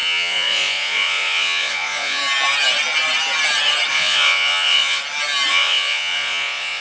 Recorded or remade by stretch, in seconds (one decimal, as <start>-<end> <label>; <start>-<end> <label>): 0.0-2.2 remade; 2.2-3.9 recorded; 3.9-5.0 remade; 5.0-5.5 recorded; 5.5-6.8 remade